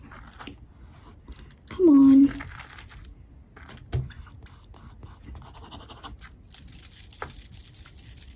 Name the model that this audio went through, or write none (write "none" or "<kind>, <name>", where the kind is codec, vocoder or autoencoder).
none